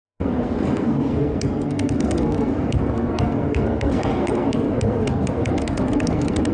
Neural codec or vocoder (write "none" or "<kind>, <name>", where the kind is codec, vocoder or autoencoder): codec, SNAC